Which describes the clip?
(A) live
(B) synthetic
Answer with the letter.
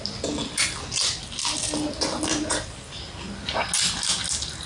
A